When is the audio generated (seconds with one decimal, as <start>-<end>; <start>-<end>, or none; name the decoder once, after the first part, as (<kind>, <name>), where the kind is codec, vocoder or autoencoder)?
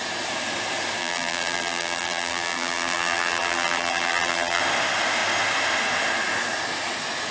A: 1.0-4.6 (vocoder, BigVGAN v2)